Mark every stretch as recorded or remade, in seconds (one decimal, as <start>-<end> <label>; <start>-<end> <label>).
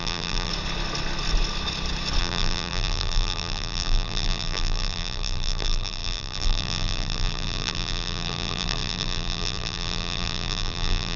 0.0-0.5 remade; 0.5-2.2 recorded; 2.2-11.2 remade